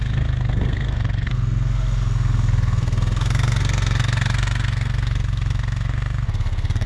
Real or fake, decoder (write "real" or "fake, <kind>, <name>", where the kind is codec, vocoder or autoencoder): fake, codec, SNAC